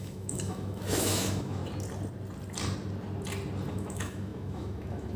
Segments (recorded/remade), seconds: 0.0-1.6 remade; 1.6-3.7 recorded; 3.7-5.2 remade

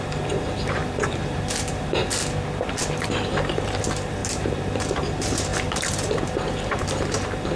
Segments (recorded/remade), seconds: 0.0-2.0 remade; 2.0-2.8 recorded; 2.8-7.5 remade

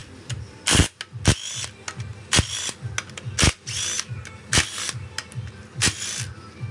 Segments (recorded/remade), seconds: 0.0-0.8 remade; 0.8-6.7 recorded

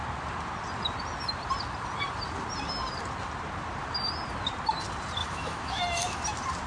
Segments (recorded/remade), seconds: 0.0-5.2 recorded; 5.2-6.2 remade; 6.2-6.7 recorded

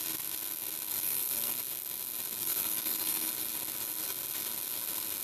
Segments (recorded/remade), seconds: 0.0-0.9 recorded; 0.9-1.6 remade; 1.6-2.4 recorded; 2.4-3.3 remade; 3.3-5.2 recorded

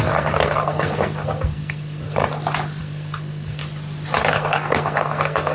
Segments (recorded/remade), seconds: 0.0-2.2 remade; 2.2-2.8 recorded; 2.8-3.6 remade; 3.6-4.3 recorded; 4.3-5.5 remade

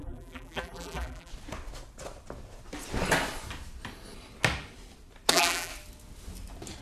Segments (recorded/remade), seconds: 0.0-1.3 remade; 1.3-5.3 recorded; 5.3-5.7 remade; 5.7-6.8 recorded